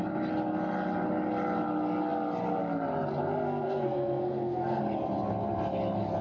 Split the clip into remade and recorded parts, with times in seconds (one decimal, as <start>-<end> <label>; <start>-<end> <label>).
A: 0.0-3.2 recorded; 3.2-4.8 remade; 4.8-6.2 recorded